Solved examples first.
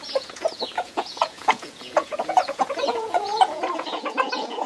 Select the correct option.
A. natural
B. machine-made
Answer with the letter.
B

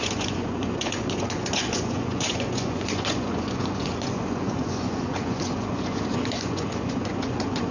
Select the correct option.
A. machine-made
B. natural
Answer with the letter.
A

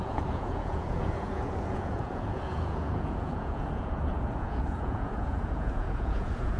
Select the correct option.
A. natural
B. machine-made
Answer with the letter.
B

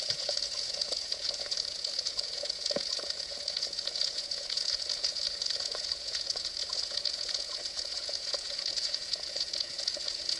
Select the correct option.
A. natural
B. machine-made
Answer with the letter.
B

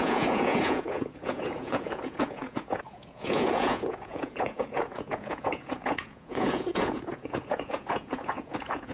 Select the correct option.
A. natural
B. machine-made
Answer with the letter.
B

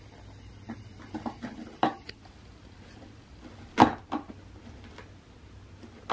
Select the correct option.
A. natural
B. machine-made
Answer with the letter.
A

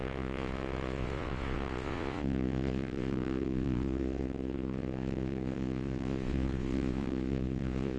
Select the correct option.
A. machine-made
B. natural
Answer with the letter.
A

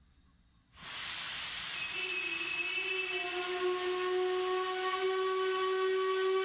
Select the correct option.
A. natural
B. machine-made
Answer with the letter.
A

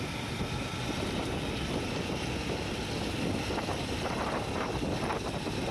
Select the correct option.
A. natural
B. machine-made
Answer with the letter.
A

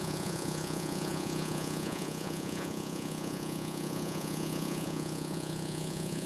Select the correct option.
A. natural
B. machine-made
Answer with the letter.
B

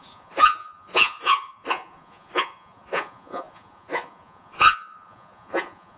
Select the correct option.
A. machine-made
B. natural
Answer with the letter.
A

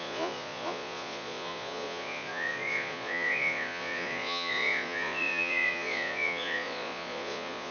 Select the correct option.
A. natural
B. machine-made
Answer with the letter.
B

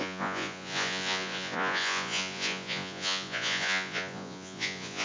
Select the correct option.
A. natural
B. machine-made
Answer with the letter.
B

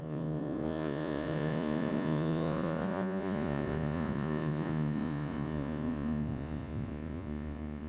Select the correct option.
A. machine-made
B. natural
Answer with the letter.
A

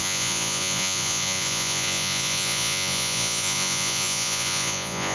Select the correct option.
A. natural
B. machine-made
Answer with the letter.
B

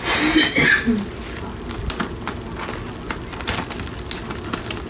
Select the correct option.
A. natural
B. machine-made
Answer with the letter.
A